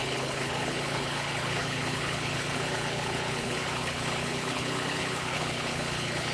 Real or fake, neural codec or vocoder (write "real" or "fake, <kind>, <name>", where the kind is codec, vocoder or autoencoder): fake, codec, HILCodec